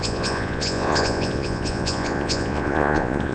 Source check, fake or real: fake